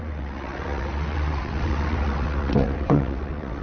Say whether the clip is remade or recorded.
remade